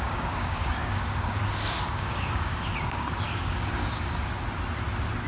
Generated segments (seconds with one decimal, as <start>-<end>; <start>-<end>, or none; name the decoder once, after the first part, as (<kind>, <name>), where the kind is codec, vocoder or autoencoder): 0.0-4.3 (codec, DAC)